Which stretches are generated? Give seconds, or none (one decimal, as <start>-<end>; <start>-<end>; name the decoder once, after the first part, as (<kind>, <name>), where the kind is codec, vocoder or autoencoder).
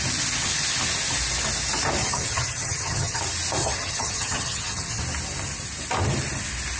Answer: 2.0-3.2 (vocoder, HiFi-GAN); 3.6-5.0